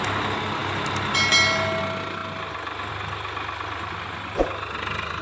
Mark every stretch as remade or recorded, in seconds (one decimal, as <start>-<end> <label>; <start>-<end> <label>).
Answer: 0.0-5.2 recorded